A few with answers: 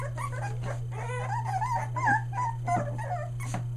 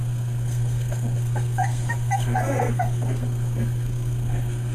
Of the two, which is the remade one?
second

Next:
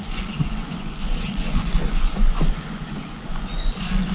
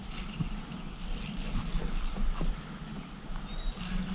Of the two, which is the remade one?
first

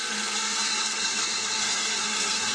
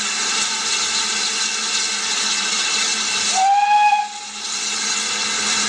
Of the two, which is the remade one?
first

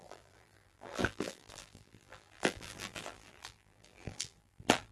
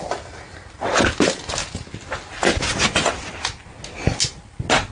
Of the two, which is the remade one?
first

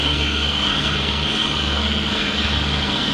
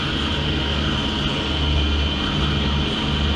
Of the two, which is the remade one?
first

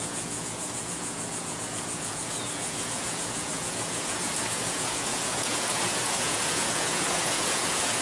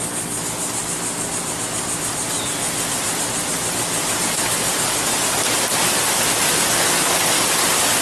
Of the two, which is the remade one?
first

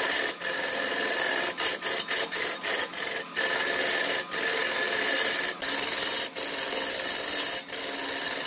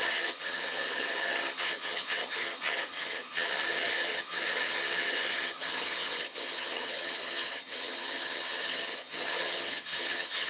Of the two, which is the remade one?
second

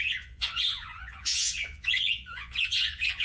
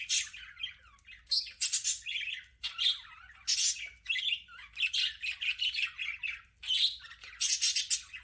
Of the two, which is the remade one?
first